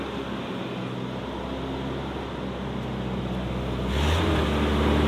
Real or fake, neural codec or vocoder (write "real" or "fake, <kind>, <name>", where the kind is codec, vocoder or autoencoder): real